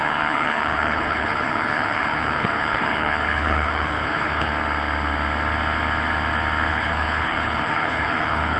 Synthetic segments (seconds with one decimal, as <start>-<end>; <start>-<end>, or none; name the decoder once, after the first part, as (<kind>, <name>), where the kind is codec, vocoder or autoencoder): 0.0-4.5 (codec, HILCodec); 6.7-8.6